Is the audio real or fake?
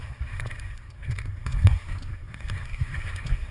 fake